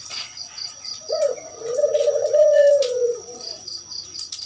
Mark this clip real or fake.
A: fake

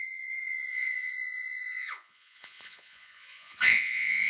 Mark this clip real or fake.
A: fake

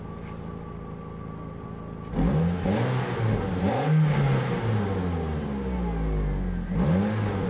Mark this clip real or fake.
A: real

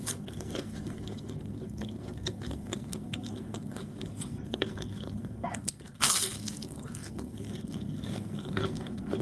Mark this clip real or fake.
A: fake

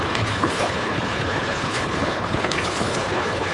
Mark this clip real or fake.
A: fake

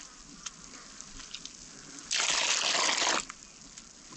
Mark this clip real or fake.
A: real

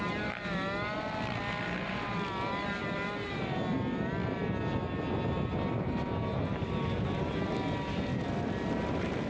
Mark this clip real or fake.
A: real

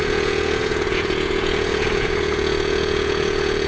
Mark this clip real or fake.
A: fake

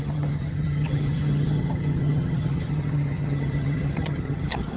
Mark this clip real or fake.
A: fake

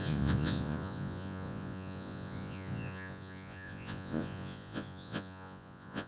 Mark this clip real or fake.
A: fake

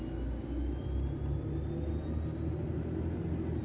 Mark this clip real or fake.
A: real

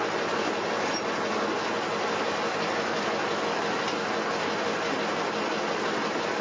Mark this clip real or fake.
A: real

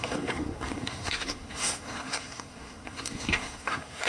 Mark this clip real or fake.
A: fake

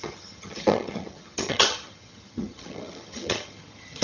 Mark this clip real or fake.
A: fake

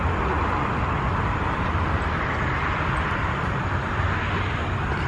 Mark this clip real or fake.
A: real